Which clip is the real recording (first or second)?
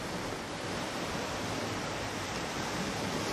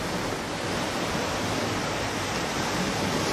second